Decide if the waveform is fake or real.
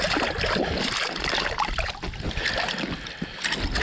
real